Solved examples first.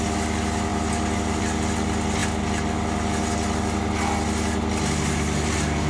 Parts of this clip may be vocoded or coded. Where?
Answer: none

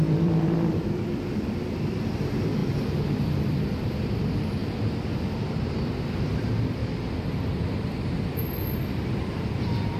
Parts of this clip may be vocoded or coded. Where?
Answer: 0.0-4.6 (vocoder, BigVGAN v2); 5.8-6.8; 7.5-10.0

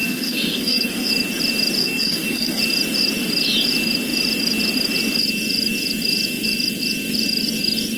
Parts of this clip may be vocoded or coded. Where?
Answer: 0.0-1.1 (codec, SNAC); 1.8-2.6